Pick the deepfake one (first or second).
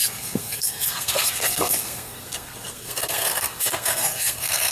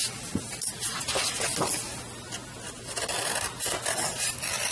first